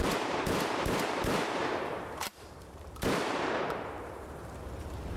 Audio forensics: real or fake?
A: fake